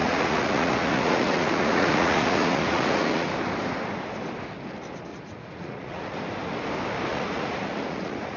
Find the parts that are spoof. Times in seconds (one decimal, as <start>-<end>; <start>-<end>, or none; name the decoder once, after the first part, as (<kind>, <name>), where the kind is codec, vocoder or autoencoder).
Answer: 0.0-3.3 (vocoder, Vocos); 5.1-6.2; 7.1-8.4